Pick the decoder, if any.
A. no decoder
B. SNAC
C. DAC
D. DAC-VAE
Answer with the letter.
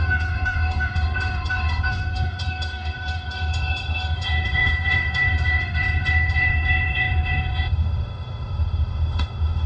D